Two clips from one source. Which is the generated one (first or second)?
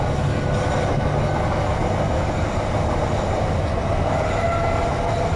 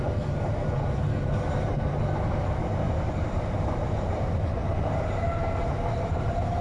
second